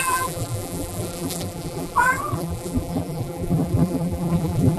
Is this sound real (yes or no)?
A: no